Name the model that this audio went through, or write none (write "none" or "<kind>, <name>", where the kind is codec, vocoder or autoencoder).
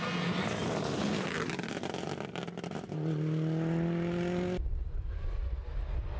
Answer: none